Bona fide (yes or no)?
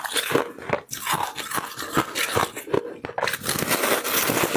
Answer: yes